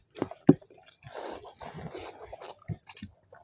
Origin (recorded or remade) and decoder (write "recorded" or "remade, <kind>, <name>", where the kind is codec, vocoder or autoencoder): recorded